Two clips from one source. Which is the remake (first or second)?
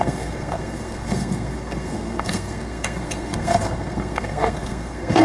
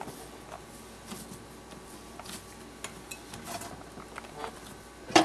first